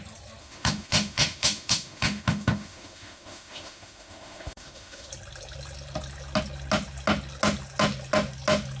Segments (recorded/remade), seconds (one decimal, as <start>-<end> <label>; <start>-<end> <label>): 0.0-0.4 recorded; 0.4-5.1 remade; 5.1-8.8 recorded